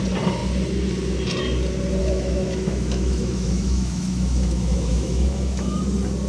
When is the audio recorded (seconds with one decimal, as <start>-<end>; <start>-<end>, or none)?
0.0-2.0; 5.8-6.3